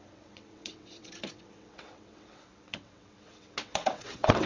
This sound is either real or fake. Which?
fake